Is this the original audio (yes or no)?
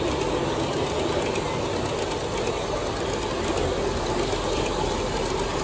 yes